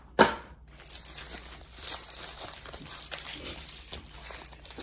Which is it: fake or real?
fake